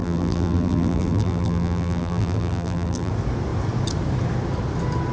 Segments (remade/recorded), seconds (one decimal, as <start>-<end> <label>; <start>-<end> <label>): 0.0-3.1 remade; 3.1-5.1 recorded